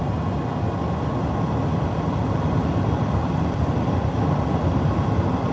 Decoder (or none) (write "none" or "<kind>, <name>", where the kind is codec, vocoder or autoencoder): none